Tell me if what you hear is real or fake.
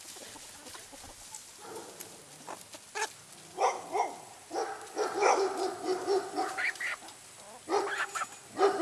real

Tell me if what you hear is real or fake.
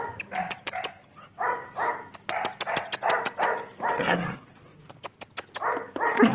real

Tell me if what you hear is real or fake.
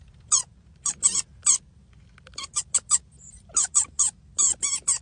real